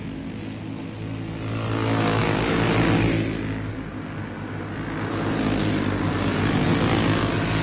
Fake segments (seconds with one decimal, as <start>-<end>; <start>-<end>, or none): none